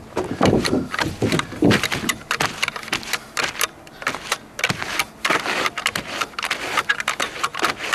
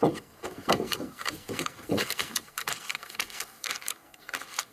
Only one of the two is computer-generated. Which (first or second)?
second